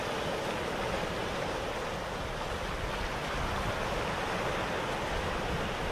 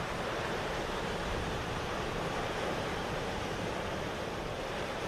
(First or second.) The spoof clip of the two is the second